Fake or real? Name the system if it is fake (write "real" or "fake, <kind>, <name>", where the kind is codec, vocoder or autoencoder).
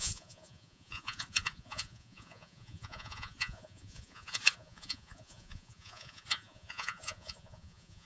fake, vocoder, Vocos